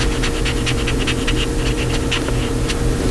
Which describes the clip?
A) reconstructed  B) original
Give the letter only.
B